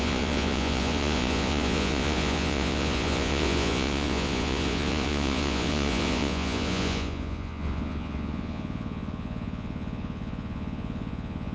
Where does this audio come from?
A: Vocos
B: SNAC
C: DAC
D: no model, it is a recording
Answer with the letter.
A